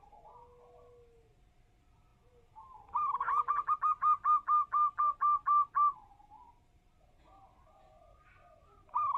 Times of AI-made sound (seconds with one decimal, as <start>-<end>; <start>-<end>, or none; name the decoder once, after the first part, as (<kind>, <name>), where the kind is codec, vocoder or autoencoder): none